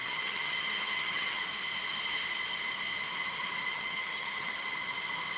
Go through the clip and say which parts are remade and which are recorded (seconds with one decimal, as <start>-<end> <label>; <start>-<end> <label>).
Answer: 0.0-1.4 remade; 1.4-3.7 recorded; 3.7-4.7 remade; 4.7-5.4 recorded